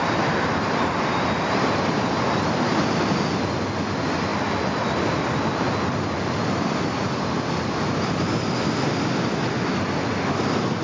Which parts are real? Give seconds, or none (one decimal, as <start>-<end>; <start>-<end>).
0.0-10.8